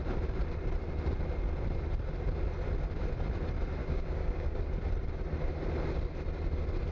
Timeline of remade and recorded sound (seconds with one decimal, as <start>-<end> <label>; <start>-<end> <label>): 0.0-3.8 recorded; 3.8-4.6 remade; 4.6-6.9 recorded